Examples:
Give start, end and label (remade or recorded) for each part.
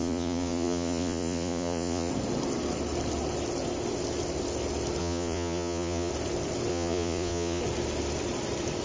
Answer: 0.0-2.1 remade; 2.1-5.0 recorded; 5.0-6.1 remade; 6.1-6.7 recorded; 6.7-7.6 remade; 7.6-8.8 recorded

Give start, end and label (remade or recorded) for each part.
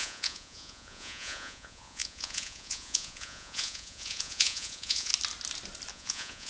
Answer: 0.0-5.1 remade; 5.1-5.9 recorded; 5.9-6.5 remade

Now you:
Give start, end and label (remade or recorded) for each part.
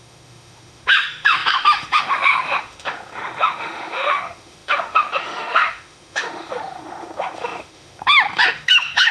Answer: 0.0-9.1 remade